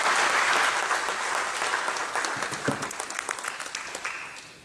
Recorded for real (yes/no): yes